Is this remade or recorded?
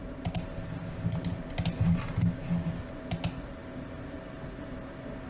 recorded